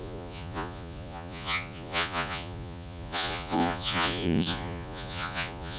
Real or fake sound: fake